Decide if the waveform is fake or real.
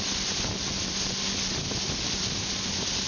real